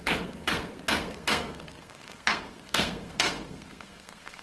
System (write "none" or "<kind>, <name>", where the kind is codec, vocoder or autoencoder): codec, SNAC